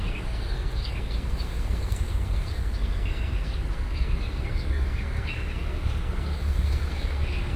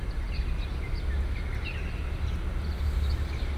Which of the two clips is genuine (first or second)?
second